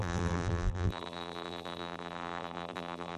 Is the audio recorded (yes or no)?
no